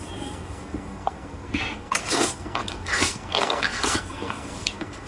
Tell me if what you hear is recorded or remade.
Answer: remade